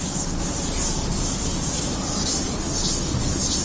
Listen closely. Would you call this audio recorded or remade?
recorded